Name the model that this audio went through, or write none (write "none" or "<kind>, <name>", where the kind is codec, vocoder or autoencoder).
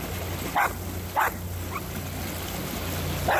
none